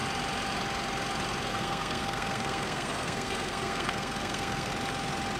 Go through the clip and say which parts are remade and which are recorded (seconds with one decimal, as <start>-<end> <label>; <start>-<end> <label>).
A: 0.0-1.5 recorded; 1.5-4.7 remade; 4.7-5.4 recorded